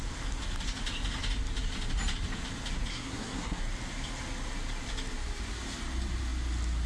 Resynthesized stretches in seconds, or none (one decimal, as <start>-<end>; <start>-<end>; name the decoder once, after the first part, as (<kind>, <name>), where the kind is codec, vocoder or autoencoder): 2.9-3.6 (codec, SNAC)